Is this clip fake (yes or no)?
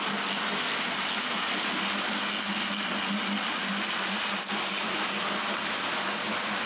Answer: no